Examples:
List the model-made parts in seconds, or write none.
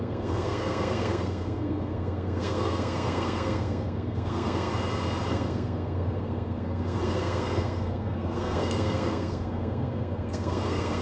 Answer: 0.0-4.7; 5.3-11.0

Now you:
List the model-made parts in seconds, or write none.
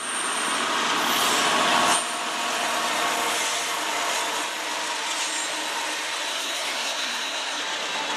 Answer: 6.3-7.6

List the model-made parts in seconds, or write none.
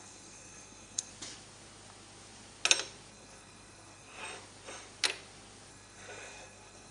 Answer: 0.0-1.1; 3.1-4.2; 5.7-6.9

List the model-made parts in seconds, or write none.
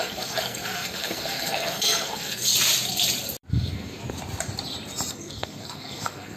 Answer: 0.0-2.5; 3.5-4.0; 5.1-6.4